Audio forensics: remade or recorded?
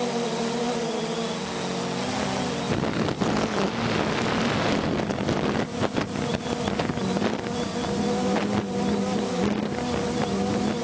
recorded